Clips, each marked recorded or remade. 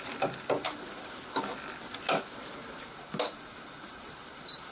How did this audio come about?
recorded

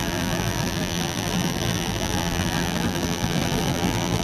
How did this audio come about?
remade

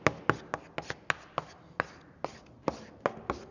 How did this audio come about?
recorded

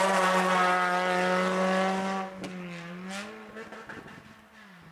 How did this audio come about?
recorded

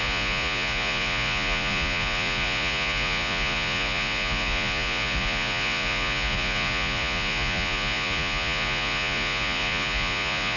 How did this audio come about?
remade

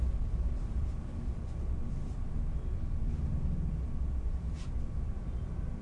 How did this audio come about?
remade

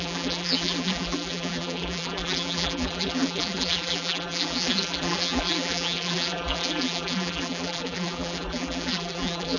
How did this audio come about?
remade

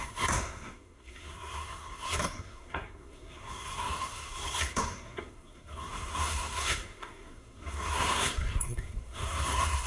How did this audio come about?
remade